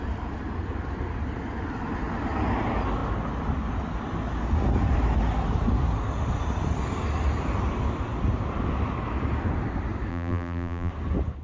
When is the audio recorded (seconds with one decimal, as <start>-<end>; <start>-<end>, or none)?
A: 0.0-10.1; 10.9-11.4

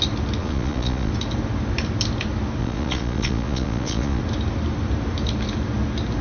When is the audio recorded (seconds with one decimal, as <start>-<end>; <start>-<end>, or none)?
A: 0.0-0.4; 1.1-2.6; 4.2-6.2